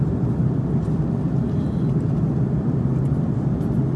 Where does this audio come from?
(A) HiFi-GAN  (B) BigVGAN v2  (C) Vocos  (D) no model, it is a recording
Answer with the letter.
D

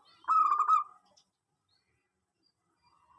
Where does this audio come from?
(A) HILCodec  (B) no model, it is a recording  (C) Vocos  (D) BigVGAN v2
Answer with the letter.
B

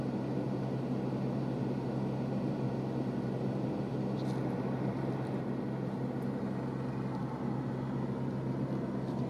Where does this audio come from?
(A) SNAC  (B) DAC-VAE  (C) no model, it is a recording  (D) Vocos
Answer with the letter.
C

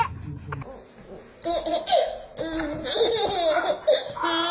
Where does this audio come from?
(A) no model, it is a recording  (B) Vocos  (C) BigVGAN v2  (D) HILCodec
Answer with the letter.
A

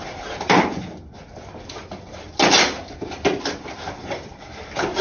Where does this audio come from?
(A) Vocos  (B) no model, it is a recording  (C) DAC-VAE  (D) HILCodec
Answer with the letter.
B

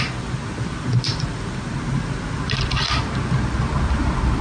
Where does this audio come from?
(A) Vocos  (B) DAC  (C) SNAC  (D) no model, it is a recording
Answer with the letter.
D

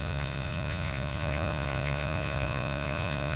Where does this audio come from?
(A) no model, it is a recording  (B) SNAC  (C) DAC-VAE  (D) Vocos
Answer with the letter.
D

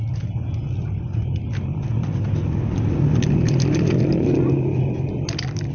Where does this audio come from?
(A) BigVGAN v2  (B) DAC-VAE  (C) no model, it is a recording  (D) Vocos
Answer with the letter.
C